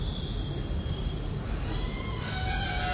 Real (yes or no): yes